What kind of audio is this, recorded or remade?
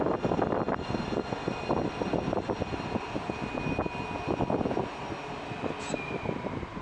recorded